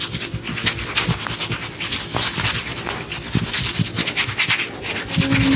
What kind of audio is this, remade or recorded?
recorded